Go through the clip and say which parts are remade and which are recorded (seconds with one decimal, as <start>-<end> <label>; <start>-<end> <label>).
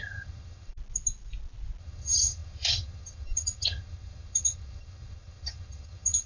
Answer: 0.0-0.7 remade; 0.7-1.8 recorded; 1.8-6.3 remade